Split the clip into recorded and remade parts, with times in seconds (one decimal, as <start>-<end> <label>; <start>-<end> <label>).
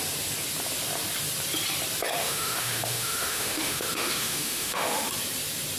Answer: 0.0-2.2 recorded; 2.2-5.1 remade; 5.1-5.8 recorded